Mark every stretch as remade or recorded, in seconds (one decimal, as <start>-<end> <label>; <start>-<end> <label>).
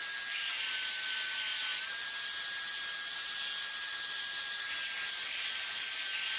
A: 0.0-6.4 recorded